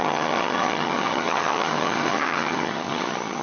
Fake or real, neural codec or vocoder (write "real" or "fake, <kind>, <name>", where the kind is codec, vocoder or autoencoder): fake, vocoder, HiFi-GAN